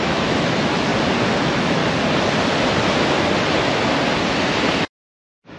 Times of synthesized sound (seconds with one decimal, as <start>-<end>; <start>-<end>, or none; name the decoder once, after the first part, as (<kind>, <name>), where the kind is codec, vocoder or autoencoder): 0.0-0.9 (autoencoder, DAC-VAE); 1.4-1.8